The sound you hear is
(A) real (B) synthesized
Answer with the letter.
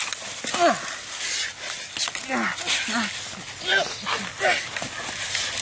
A